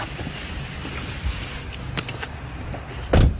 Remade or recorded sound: recorded